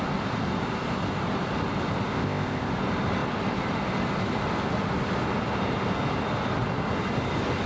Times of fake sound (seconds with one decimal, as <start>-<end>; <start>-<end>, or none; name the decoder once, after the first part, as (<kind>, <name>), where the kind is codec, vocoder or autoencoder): 2.1-2.7 (codec, ZipCodec)